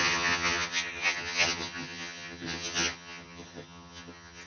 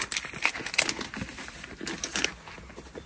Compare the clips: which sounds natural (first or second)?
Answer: second